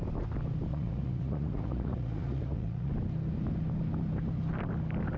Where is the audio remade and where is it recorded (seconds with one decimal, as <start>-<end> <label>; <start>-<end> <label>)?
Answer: 0.0-0.7 recorded; 0.7-2.9 remade; 2.9-5.2 recorded